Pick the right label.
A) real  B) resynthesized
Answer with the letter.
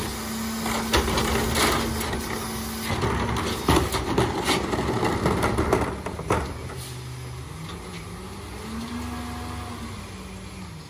A